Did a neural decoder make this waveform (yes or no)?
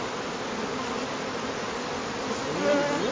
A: no